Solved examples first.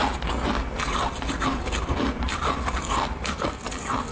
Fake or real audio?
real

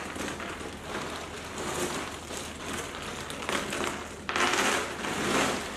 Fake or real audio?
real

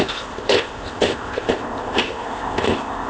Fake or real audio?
fake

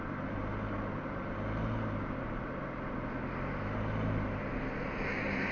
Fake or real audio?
real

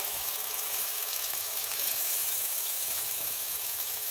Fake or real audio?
fake